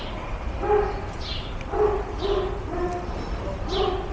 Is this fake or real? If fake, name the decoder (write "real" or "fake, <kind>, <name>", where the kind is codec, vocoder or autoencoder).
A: real